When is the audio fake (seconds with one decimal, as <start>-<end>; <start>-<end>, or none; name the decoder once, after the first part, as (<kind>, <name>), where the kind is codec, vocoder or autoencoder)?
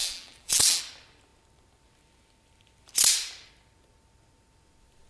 0.0-0.8 (vocoder, BigVGAN v2)